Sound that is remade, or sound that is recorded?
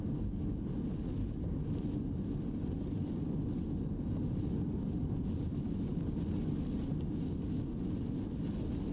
recorded